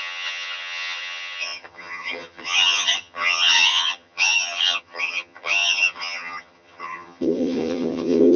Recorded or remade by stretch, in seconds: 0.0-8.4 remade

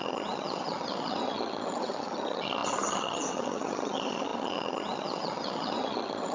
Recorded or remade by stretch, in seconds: 0.0-6.3 remade

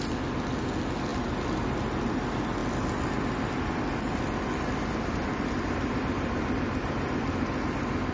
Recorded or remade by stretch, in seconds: 0.0-8.1 recorded